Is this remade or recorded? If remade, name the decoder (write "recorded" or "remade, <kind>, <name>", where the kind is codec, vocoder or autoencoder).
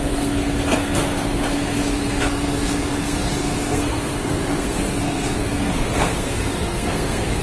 remade, codec, SNAC